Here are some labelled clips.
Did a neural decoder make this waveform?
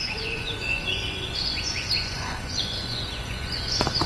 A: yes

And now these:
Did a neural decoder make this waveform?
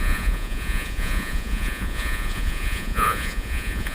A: yes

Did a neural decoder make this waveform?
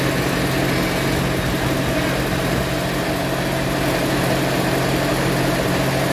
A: no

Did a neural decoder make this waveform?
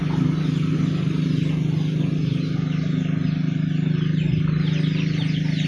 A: no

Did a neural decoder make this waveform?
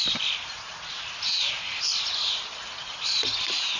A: no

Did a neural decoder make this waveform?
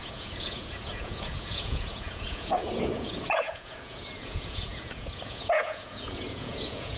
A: yes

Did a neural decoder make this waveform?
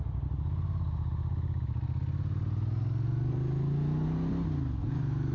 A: no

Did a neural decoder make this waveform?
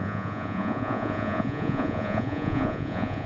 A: yes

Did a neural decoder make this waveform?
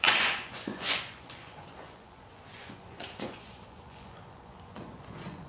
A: yes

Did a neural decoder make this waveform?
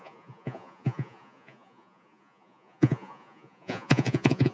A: yes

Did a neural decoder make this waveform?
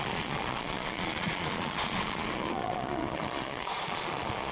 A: yes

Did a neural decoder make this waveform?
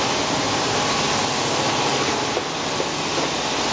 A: no